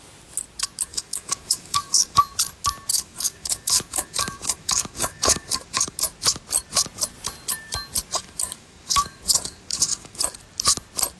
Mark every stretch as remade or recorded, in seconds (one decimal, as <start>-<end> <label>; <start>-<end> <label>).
0.0-0.9 recorded; 0.9-2.2 remade; 2.2-2.9 recorded; 2.9-6.0 remade; 6.0-8.2 recorded; 8.2-10.2 remade; 10.2-11.2 recorded